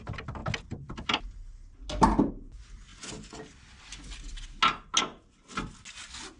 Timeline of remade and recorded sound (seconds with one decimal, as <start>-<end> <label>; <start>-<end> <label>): 0.0-6.4 recorded